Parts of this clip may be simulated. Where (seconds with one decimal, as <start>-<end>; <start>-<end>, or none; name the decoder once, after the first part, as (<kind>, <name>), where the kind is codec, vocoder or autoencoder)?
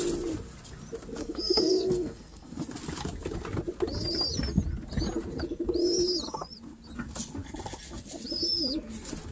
1.2-2.6 (codec, SNAC)